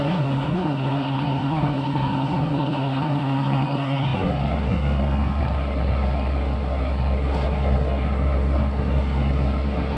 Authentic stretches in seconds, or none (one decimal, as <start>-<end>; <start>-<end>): none